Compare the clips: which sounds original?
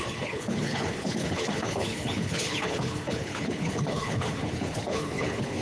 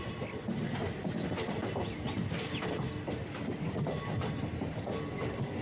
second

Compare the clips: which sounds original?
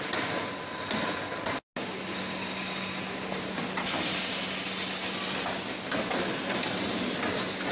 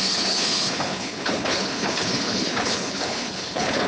first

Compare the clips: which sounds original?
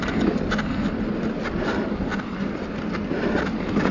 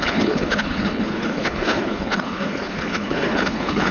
first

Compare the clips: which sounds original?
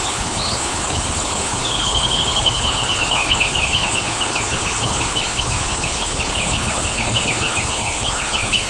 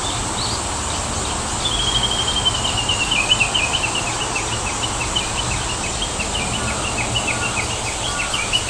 second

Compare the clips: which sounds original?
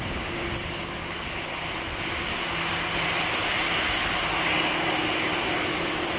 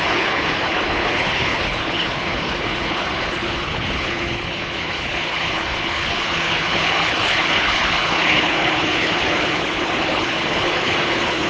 first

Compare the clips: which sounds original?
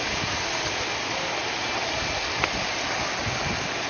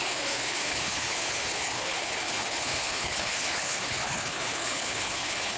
first